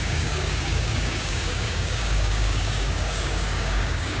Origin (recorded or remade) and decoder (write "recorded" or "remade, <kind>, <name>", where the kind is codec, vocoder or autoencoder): remade, codec, DAC